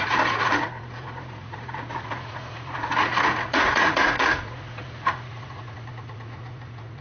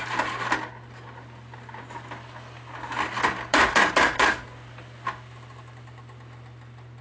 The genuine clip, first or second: second